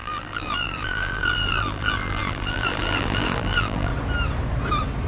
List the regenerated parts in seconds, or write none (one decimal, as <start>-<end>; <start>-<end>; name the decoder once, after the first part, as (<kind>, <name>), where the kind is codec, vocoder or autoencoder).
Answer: 0.0-3.9 (vocoder, BigVGAN v2)